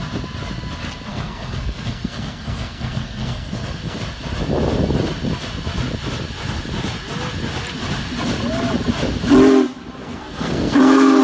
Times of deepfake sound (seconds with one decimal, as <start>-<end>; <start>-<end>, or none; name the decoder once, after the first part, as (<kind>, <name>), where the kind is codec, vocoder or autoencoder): 1.1-4.0 (codec, SNAC); 10.0-11.2